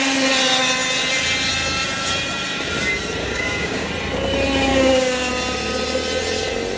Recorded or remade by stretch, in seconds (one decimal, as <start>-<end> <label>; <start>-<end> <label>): 0.0-3.2 recorded; 3.2-3.9 remade; 3.9-4.7 recorded; 4.7-5.3 remade; 5.3-6.8 recorded